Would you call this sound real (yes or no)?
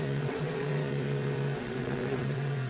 no